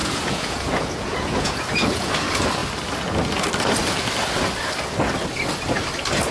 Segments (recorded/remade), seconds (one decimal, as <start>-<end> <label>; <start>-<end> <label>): 0.0-2.1 remade; 2.1-6.3 recorded